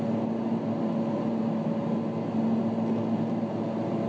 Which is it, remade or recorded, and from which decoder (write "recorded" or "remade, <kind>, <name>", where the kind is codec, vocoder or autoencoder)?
recorded